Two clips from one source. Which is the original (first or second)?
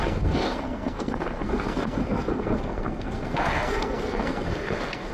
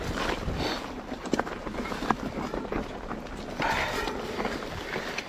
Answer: second